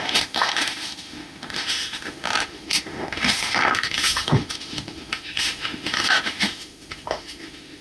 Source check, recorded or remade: remade